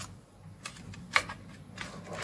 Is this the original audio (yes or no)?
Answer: yes